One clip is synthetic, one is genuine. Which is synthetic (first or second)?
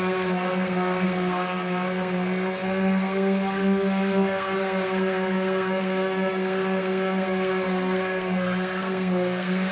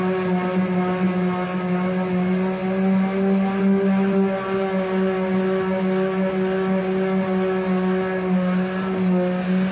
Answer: first